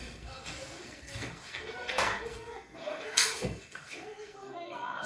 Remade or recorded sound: remade